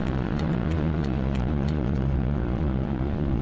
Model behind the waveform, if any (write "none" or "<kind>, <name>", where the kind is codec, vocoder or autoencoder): vocoder, Vocos